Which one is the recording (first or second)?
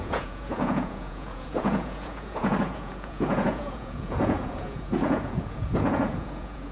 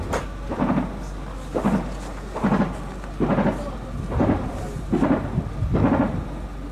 second